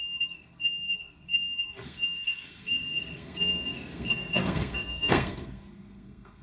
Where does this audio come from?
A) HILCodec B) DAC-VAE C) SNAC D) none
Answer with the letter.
C